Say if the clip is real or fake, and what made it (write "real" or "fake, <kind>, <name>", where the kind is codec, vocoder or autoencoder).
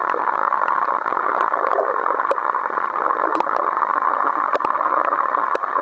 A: fake, vocoder, HiFi-GAN